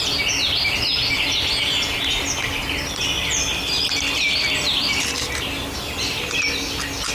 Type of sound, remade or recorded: recorded